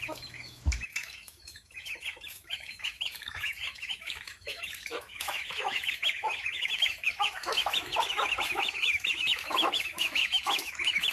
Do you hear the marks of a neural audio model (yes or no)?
yes